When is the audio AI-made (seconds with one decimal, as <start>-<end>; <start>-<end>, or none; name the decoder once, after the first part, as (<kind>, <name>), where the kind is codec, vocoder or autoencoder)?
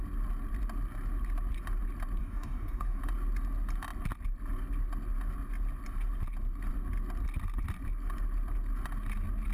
2.2-3.0 (codec, DAC)